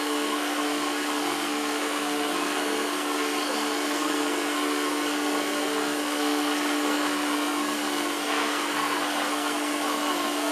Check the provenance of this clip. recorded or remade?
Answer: remade